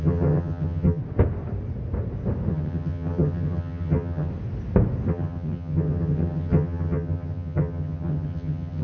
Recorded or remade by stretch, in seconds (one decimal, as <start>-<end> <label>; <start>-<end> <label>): 0.0-1.0 remade; 1.0-2.5 recorded; 2.5-4.3 remade; 4.3-5.1 recorded; 5.1-8.8 remade